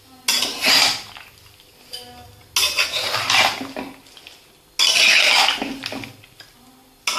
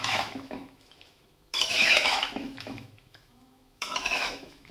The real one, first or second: first